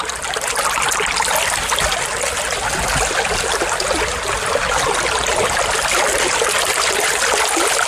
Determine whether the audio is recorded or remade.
recorded